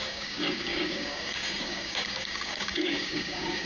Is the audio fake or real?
fake